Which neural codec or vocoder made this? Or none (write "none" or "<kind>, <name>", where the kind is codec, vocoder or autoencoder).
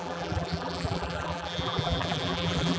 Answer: vocoder, BigVGAN v2